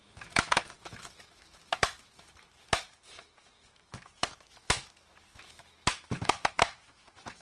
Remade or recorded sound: remade